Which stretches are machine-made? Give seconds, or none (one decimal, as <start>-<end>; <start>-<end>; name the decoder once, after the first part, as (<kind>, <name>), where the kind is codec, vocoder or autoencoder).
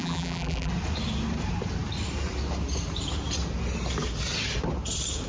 0.0-0.7 (vocoder, BigVGAN v2)